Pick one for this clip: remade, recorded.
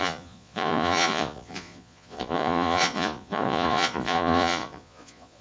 remade